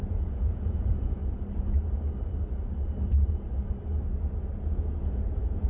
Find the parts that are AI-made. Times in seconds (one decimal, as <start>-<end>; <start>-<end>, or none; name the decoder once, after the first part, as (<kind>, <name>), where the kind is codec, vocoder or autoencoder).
0.0-1.2 (vocoder, Vocos); 4.6-5.7